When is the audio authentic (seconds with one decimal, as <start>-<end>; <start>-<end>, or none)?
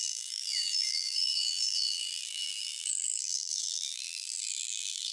none